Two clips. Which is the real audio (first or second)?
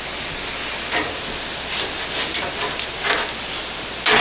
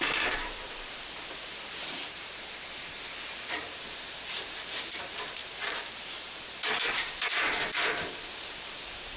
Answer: first